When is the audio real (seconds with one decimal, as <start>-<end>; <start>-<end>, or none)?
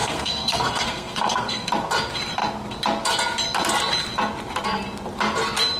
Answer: 1.7-5.8